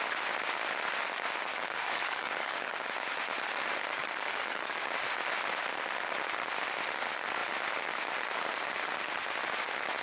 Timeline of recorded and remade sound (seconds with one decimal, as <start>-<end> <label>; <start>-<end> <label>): 0.0-1.5 recorded; 1.5-2.8 remade; 2.8-4.0 recorded; 4.0-4.9 remade; 4.9-10.0 recorded